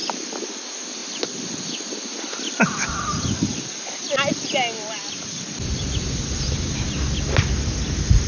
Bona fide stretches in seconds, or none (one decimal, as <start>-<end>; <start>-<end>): 0.0-8.3